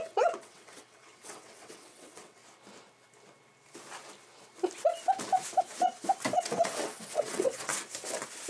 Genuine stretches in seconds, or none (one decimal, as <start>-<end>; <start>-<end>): 2.4-6.4; 7.7-8.5